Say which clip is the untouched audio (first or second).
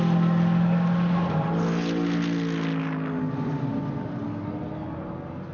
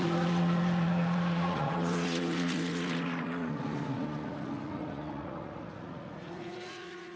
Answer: first